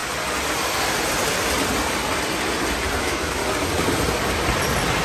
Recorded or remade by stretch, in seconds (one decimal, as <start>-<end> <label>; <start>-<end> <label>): 0.0-3.0 recorded; 3.0-3.4 remade; 3.4-5.0 recorded